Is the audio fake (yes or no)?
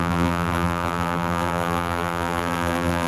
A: yes